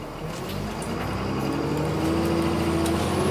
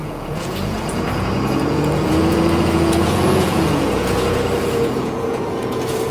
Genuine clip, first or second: first